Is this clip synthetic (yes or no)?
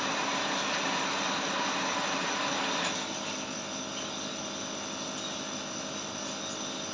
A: no